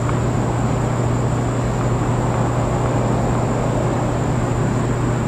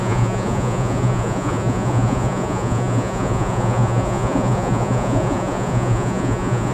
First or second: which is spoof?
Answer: second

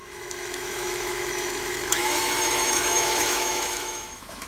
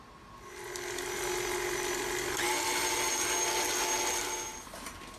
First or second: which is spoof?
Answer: first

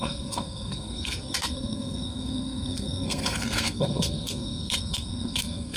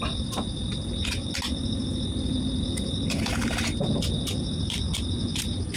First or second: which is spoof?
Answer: first